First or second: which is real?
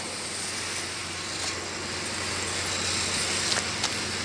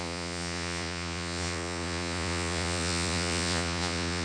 first